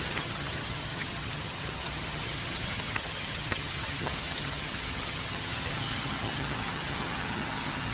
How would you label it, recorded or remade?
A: remade